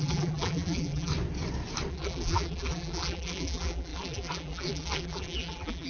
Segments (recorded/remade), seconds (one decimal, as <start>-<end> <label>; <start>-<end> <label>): 0.0-1.1 remade; 1.1-1.9 recorded; 1.9-5.9 remade